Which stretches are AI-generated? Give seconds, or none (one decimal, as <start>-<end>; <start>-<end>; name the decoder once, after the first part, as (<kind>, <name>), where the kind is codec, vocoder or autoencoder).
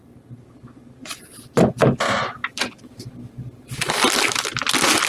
2.4-4.2 (vocoder, BigVGAN v2)